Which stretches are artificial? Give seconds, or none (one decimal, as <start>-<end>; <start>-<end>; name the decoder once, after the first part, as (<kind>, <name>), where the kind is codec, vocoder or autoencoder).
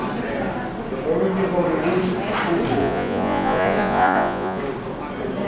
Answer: 2.8-4.6 (vocoder, Vocos)